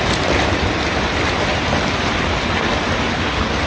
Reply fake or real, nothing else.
real